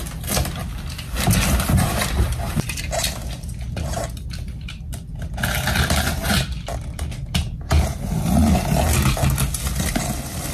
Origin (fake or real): real